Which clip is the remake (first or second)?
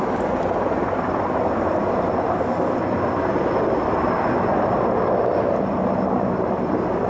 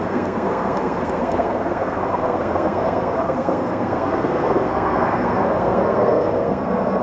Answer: second